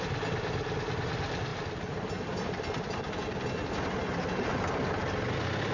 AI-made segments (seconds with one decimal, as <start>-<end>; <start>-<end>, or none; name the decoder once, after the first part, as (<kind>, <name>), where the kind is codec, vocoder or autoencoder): none